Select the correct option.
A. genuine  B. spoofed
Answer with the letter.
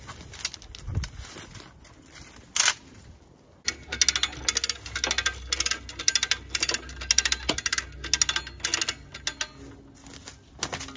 A